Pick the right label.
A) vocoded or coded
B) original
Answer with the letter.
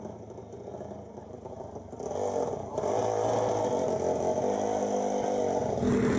B